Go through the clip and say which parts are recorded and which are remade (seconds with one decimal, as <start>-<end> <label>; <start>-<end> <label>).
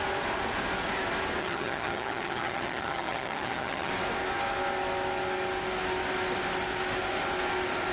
0.0-1.4 recorded; 1.4-3.9 remade; 3.9-7.9 recorded